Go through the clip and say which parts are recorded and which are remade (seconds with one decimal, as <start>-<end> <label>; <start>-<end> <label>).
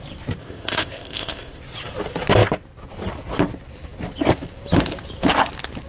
0.0-0.4 recorded; 0.4-1.6 remade; 1.6-5.9 recorded